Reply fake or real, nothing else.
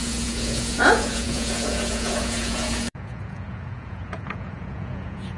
fake